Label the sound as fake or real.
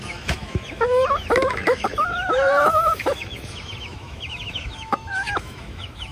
fake